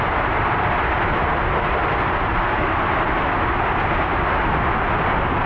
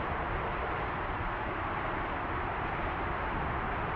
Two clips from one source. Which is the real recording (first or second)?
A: first